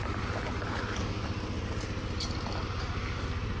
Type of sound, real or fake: real